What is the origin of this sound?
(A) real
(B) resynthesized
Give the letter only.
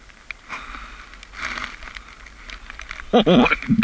A